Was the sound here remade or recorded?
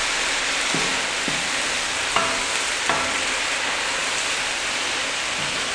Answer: recorded